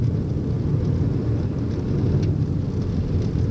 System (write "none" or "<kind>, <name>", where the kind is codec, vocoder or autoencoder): none